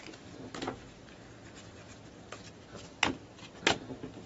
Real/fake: real